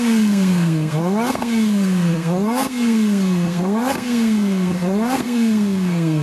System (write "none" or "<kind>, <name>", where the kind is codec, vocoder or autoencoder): codec, SNAC